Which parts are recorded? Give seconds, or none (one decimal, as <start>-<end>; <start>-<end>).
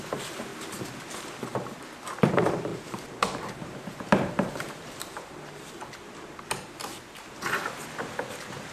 0.5-2.3; 5.8-8.7